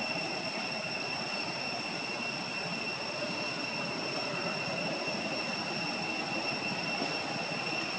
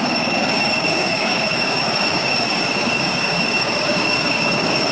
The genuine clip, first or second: first